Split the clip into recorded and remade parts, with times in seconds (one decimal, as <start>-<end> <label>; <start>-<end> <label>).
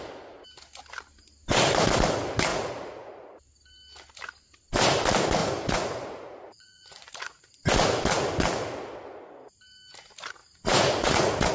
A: 0.0-2.5 recorded; 2.5-3.4 remade; 3.4-5.4 recorded; 5.4-7.4 remade; 7.4-10.4 recorded; 10.4-11.5 remade